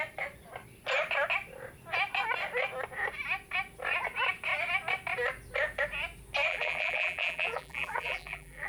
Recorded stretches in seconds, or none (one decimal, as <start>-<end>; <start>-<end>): 0.0-6.5